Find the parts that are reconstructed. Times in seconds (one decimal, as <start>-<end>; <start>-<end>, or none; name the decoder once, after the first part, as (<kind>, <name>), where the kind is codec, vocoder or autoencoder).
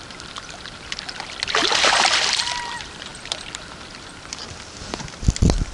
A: none